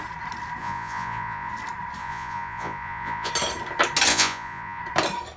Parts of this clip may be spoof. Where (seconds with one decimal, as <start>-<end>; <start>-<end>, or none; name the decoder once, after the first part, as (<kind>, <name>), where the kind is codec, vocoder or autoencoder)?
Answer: 0.6-1.5 (vocoder, Vocos); 2.0-3.3; 4.1-4.8